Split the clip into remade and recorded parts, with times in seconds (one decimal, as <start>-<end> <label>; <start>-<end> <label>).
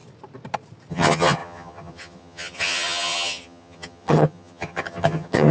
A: 0.0-0.9 recorded; 0.9-5.5 remade